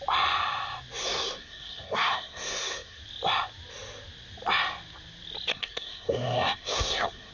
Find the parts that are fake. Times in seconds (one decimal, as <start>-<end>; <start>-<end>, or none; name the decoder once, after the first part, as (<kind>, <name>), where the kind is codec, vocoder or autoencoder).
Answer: 1.0-3.0 (codec, SNAC); 5.5-7.3